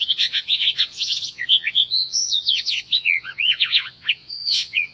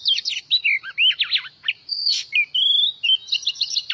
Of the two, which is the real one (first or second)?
second